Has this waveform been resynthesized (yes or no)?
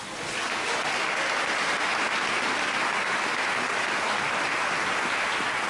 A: no